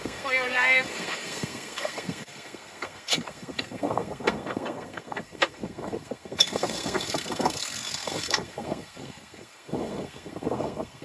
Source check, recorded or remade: remade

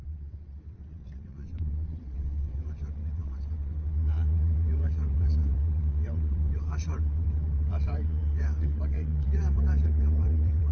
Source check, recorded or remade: remade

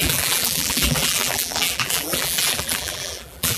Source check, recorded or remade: remade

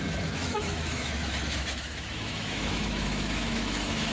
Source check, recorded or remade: remade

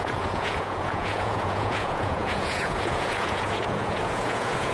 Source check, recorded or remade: remade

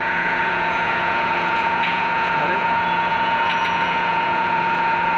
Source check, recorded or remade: remade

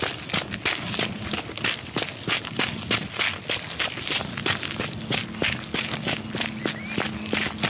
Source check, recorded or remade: recorded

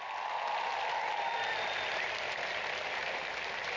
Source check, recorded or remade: recorded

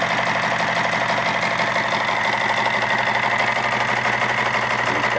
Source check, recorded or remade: recorded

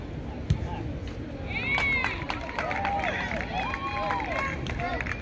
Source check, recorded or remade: recorded